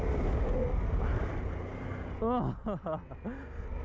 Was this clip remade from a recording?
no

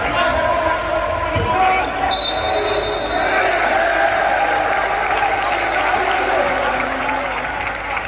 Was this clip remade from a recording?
no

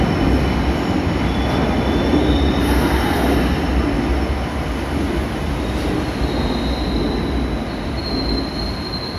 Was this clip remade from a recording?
no